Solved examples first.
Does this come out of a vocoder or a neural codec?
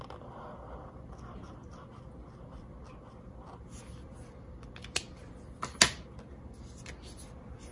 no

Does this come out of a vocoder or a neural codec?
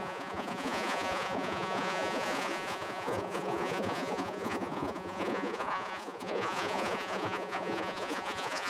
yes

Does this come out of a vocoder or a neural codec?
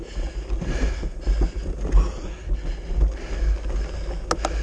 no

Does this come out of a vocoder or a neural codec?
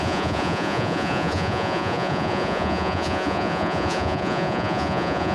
yes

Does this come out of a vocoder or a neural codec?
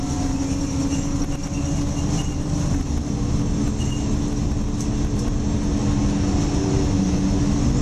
no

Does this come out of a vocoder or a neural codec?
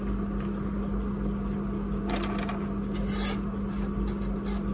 no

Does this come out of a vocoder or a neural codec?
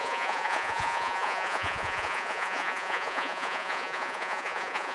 yes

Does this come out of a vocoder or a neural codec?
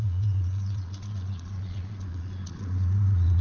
yes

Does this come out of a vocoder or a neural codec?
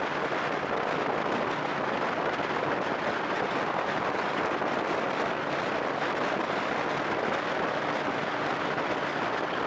no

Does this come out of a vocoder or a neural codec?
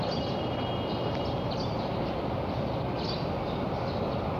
no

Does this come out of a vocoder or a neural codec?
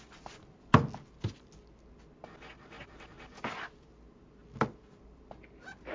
no